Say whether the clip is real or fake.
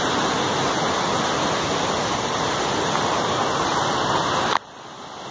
real